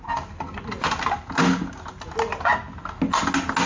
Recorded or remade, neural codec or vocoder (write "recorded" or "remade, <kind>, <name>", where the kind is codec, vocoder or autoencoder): recorded